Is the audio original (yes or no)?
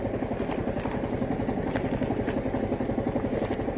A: yes